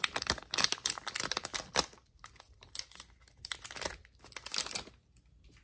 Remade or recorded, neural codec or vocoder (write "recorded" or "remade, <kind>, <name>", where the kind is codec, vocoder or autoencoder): recorded